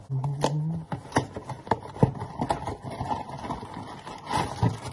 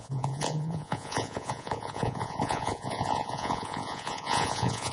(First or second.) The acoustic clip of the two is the first